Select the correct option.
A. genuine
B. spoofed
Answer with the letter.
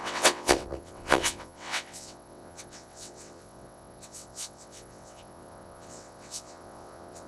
B